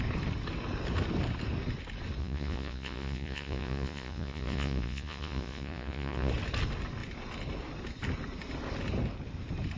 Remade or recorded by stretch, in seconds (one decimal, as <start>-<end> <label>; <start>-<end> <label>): 0.0-2.2 recorded; 2.2-6.3 remade; 6.3-9.8 recorded